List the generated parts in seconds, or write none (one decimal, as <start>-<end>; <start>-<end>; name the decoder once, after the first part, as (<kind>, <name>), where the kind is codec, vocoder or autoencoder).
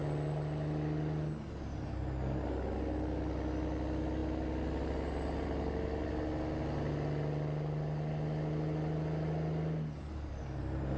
none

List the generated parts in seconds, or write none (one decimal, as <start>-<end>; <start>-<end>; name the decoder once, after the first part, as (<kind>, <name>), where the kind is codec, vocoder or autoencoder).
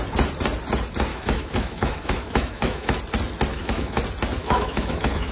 1.1-3.0 (autoencoder, DAC-VAE); 3.5-4.0; 4.4-5.3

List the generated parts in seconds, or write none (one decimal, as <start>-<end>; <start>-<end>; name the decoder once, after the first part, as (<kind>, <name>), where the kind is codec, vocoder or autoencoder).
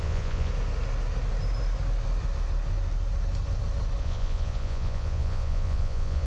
0.0-0.5 (vocoder, Vocos); 4.0-6.3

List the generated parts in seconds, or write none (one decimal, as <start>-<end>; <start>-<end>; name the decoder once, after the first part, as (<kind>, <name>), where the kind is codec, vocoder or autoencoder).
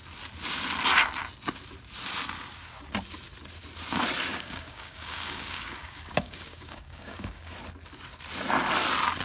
4.3-7.5 (codec, DAC)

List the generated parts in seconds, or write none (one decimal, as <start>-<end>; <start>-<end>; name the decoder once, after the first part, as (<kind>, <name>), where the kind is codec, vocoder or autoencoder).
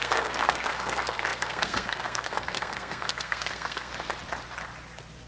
0.0-3.9 (codec, SNAC)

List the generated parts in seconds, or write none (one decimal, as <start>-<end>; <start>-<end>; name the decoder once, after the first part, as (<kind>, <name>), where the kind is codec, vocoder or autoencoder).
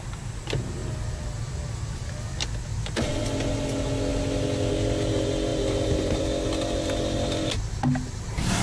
none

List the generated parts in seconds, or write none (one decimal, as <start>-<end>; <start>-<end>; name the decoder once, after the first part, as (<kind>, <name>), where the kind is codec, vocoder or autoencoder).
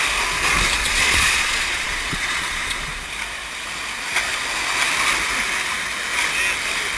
0.8-3.1 (vocoder, Vocos)